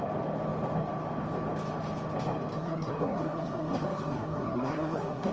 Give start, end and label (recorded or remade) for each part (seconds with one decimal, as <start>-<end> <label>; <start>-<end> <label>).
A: 0.0-2.5 recorded; 2.5-5.3 remade